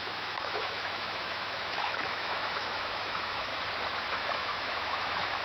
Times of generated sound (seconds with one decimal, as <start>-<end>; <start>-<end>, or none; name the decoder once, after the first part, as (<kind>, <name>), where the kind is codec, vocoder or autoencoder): 0.0-3.5 (autoencoder, DAC-VAE); 4.1-5.4